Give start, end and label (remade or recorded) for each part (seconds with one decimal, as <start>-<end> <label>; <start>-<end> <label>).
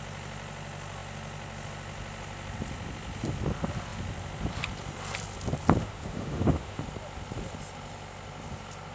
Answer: 0.0-5.8 recorded; 5.8-6.8 remade; 6.8-8.9 recorded